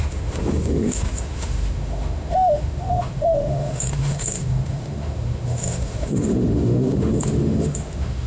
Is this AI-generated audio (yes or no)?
yes